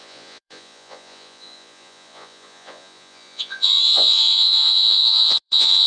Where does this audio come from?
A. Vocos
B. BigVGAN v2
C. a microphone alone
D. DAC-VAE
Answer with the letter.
A